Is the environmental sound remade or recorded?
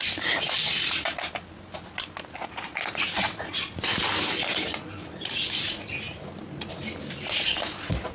recorded